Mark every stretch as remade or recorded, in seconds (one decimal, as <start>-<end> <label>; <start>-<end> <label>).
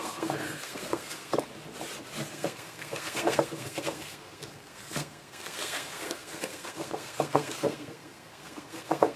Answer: 0.0-1.5 remade; 1.5-2.3 recorded; 2.3-9.2 remade